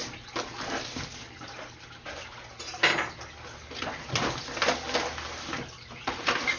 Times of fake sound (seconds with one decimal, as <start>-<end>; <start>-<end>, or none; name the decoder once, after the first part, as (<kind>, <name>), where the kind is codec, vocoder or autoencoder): none